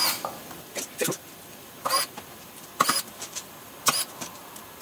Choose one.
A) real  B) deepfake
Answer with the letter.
B